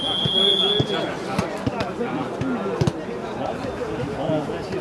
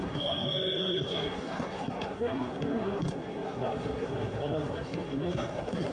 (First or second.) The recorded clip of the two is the first